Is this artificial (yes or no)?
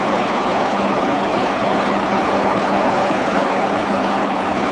yes